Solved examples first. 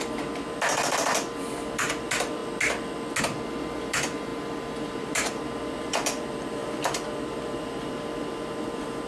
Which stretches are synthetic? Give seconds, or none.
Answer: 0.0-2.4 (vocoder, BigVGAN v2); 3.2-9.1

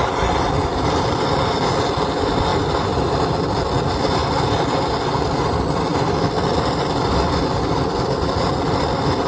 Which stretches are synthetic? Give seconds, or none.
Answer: 2.5-3.0 (vocoder, BigVGAN v2); 5.9-7.1

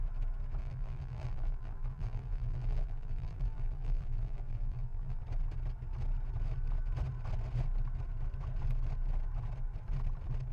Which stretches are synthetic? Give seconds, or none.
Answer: 0.6-5.2 (vocoder, BigVGAN v2)